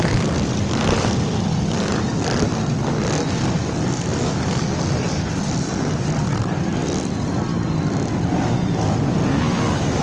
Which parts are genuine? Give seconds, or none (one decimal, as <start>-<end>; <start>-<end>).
2.5-3.4; 4.1-5.3; 7.5-9.4